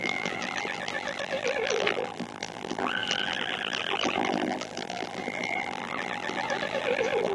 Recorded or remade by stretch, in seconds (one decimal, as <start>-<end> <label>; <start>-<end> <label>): 0.0-7.3 remade